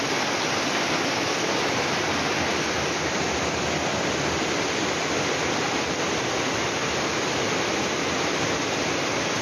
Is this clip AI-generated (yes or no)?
no